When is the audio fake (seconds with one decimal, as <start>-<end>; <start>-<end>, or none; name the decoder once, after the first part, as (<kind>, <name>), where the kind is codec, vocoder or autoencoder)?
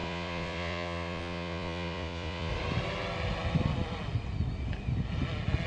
0.0-2.5 (vocoder, Vocos)